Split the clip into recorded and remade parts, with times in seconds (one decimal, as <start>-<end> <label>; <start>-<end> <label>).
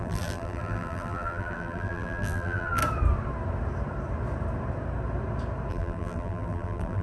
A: 0.0-2.8 remade; 2.8-5.7 recorded; 5.7-7.0 remade